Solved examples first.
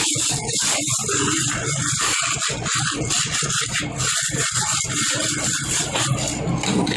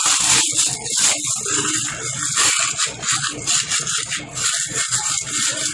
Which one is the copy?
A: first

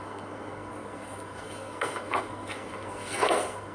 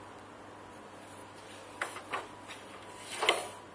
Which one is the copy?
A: first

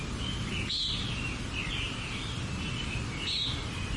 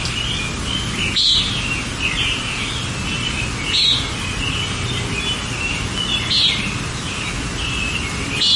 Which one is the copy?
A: first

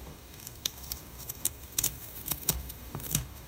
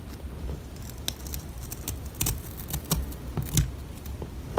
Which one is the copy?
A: first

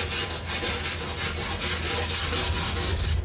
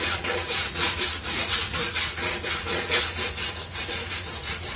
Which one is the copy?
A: second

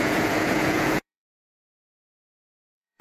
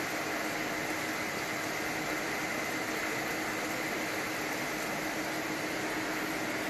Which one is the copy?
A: first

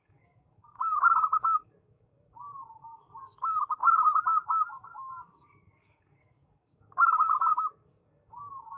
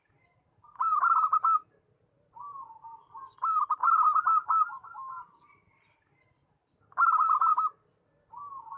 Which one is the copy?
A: first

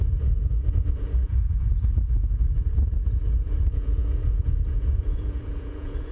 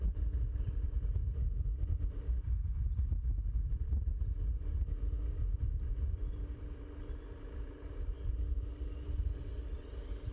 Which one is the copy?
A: first